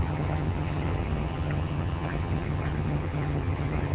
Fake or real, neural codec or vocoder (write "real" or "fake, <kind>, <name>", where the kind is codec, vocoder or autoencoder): fake, vocoder, HiFi-GAN